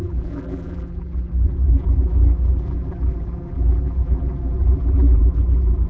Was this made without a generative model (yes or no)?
no